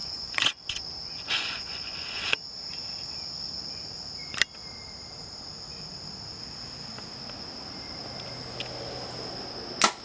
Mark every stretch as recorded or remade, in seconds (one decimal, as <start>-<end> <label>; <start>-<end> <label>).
0.0-2.4 remade; 2.4-10.0 recorded